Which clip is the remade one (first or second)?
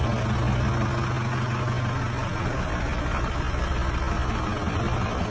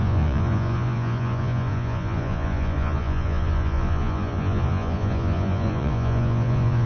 second